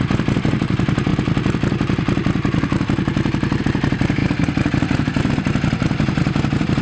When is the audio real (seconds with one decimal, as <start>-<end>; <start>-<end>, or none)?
1.1-3.6